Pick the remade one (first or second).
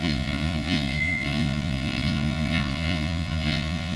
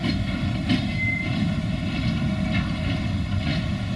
first